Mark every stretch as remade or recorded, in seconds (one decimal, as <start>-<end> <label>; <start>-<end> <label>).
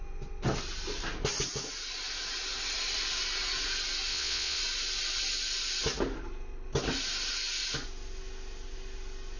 0.0-4.1 recorded; 4.1-4.6 remade; 4.6-9.4 recorded